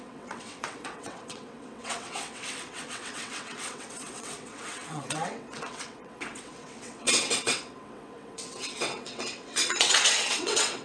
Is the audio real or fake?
fake